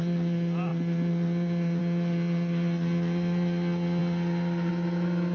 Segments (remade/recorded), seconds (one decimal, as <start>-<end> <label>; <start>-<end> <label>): 0.0-5.3 recorded